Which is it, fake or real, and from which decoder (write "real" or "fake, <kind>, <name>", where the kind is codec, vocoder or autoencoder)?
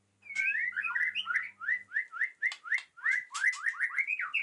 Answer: real